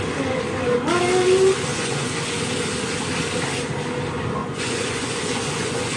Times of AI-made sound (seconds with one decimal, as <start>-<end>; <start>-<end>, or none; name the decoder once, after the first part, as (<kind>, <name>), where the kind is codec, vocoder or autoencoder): 1.7-2.4 (vocoder, Vocos); 4.4-6.0